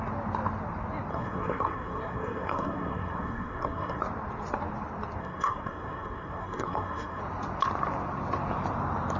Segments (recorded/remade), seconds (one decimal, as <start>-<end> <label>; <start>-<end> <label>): 0.0-1.1 recorded; 1.1-4.0 remade; 4.0-5.2 recorded; 5.2-7.2 remade; 7.2-9.2 recorded